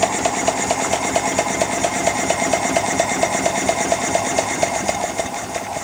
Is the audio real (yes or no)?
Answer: yes